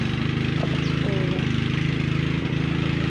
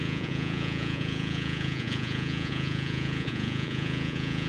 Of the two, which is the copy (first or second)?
second